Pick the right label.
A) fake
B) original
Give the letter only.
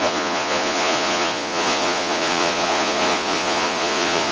A